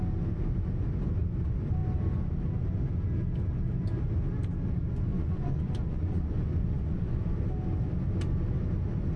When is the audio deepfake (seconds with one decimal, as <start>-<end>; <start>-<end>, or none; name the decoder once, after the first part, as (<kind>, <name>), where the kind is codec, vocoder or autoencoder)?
5.1-7.3 (vocoder, Vocos)